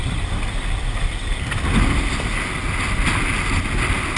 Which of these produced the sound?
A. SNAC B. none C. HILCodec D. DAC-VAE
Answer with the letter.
B